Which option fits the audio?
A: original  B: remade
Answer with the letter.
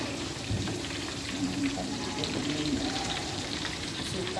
B